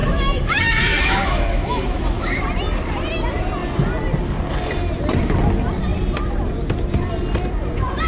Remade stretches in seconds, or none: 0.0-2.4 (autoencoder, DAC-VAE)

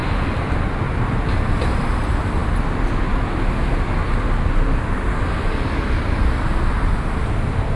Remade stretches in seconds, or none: none

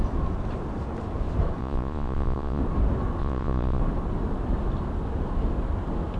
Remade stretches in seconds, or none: 1.6-2.6 (vocoder, Vocos); 3.2-3.8

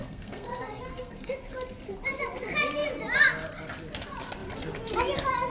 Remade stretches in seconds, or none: 0.0-1.3 (codec, SNAC)

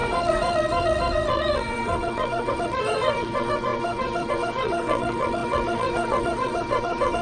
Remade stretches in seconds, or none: 0.0-7.2 (vocoder, WaveNeXt)

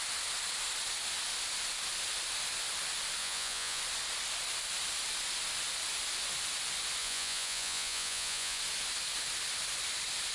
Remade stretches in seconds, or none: 3.2-3.8 (vocoder, Vocos); 7.0-8.6

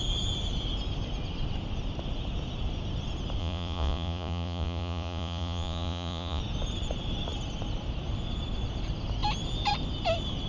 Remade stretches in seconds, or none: 3.4-6.4 (vocoder, Vocos)

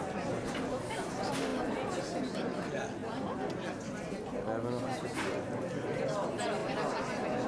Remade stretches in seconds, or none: none